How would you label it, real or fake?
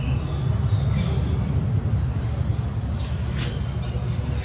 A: real